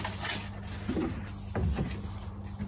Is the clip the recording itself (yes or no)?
yes